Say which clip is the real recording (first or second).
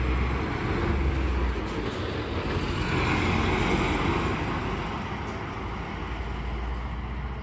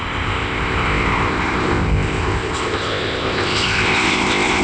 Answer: first